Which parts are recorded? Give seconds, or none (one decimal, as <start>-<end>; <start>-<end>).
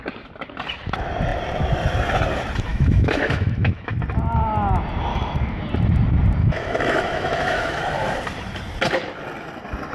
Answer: 0.0-2.7; 4.0-5.1; 5.6-6.4; 7.8-9.9